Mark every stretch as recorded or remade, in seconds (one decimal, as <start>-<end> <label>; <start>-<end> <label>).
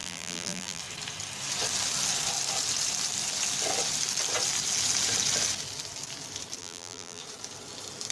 0.0-0.8 remade; 0.8-6.6 recorded; 6.6-7.2 remade; 7.2-8.1 recorded